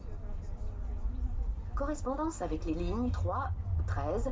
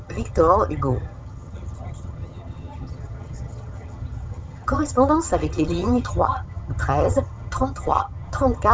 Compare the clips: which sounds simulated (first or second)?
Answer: second